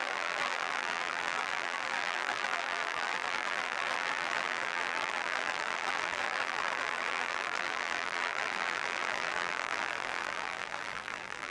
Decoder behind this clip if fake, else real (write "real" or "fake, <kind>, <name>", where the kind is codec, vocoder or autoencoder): fake, vocoder, BigVGAN v2